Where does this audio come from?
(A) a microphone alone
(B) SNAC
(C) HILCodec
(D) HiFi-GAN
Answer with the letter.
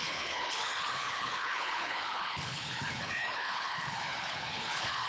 C